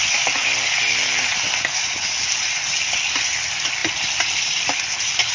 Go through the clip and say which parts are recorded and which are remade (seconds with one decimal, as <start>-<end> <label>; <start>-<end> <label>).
0.0-5.3 recorded